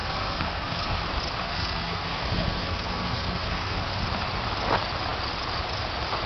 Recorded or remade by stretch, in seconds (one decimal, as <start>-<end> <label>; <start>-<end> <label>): 0.0-1.0 remade; 1.0-1.4 recorded; 1.4-3.9 remade; 3.9-6.3 recorded